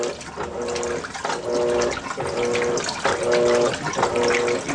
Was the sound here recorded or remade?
recorded